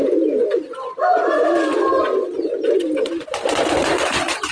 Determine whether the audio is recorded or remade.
recorded